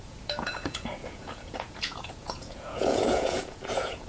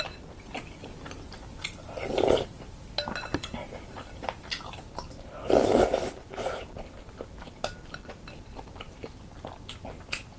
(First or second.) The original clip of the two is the second